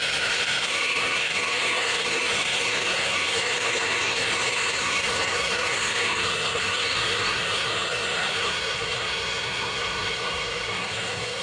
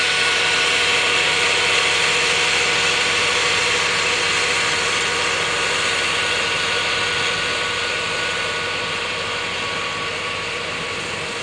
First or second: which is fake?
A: first